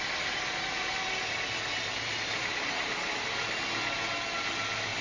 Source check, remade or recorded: recorded